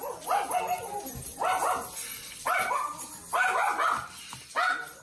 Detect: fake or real real